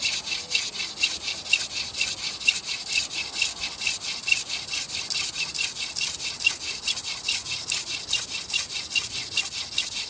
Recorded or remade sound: recorded